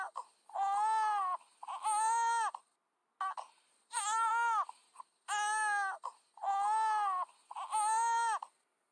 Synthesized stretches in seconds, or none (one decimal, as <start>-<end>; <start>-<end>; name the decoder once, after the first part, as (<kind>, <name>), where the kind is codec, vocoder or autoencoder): none